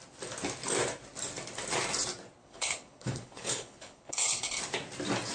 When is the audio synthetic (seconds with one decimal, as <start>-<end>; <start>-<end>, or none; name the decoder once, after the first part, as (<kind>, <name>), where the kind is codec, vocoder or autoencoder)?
2.4-4.6 (codec, HILCodec)